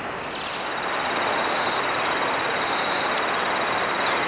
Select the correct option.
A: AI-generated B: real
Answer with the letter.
B